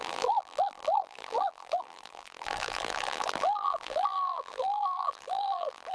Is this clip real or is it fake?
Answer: fake